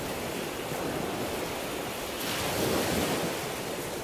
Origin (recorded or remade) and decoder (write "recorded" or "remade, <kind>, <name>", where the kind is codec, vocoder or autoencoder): recorded